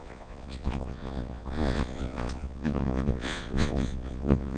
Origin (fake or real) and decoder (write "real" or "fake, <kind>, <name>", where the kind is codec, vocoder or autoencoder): fake, vocoder, Vocos